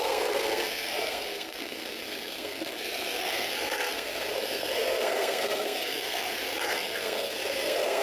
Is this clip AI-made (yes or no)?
yes